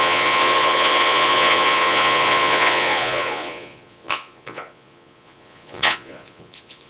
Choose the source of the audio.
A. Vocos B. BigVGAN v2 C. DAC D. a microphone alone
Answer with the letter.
A